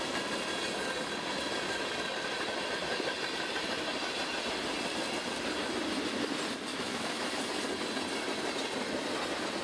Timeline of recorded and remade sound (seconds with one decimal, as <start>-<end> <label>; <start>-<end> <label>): 0.0-6.7 recorded; 6.7-7.3 remade; 7.3-9.6 recorded